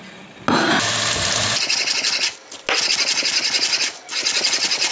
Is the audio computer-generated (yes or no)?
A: no